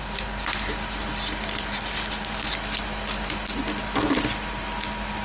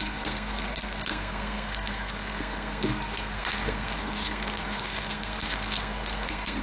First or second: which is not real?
second